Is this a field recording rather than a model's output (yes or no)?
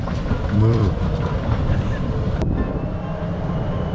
no